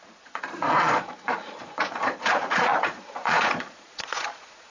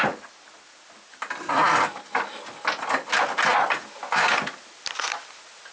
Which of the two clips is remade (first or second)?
first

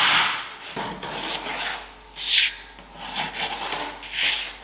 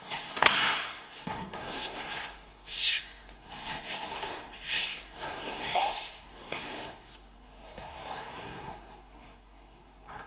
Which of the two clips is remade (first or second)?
second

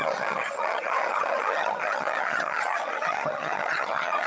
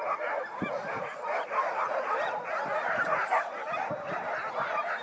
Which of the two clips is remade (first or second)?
first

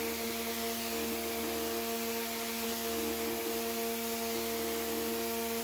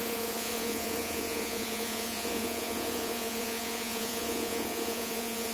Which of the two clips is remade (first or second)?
second